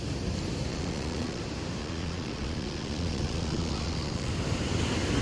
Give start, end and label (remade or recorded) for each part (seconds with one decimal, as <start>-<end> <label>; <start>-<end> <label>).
0.0-0.7 recorded; 0.7-1.4 remade; 1.4-1.8 recorded; 1.8-4.3 remade; 4.3-5.2 recorded